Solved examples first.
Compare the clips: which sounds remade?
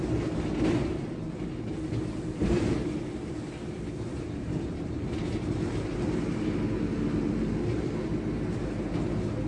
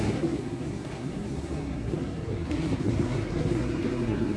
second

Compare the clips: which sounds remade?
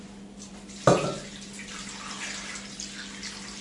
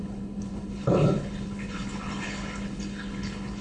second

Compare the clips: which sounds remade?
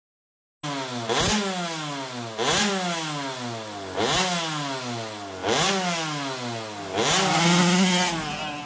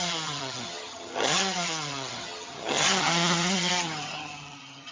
second